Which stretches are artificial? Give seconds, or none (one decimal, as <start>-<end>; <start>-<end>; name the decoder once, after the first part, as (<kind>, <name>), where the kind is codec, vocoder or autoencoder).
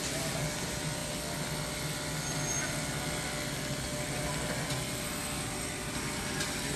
none